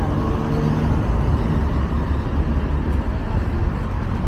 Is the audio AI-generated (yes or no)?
no